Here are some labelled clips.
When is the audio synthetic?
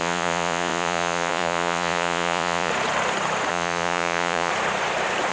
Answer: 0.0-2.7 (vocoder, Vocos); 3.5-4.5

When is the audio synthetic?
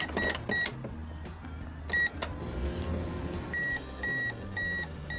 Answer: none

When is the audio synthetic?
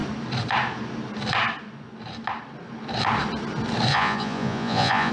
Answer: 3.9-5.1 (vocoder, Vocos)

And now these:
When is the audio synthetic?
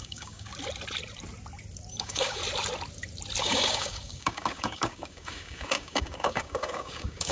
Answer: 0.0-0.5 (codec, DAC); 2.0-2.4; 3.4-7.3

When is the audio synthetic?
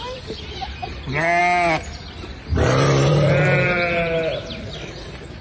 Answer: none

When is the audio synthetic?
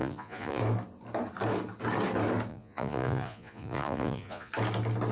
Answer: 0.0-0.6 (vocoder, Vocos); 2.5-4.5